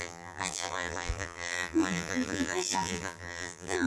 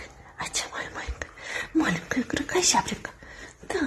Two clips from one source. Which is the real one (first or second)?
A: second